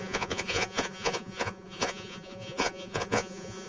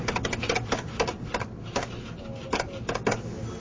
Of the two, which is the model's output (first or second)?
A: first